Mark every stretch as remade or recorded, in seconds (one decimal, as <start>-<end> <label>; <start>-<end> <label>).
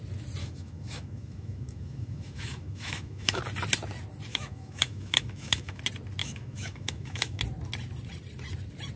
0.0-0.4 recorded; 0.4-3.4 remade; 3.4-4.3 recorded; 4.3-5.8 remade; 5.8-6.2 recorded; 6.2-7.4 remade; 7.4-9.0 recorded